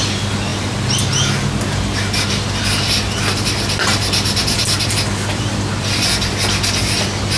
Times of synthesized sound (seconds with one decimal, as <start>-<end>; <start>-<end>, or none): none